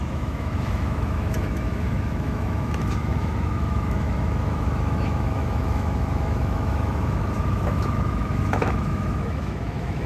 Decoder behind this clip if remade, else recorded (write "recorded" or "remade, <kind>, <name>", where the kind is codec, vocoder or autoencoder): remade, autoencoder, DAC-VAE